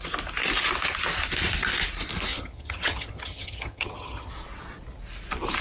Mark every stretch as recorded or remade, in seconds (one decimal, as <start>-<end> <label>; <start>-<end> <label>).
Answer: 0.0-2.3 recorded; 2.3-4.3 remade; 4.3-5.6 recorded